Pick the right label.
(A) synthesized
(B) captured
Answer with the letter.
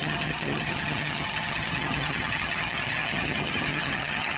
A